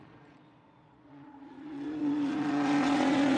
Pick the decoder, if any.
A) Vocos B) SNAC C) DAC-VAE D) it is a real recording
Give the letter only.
A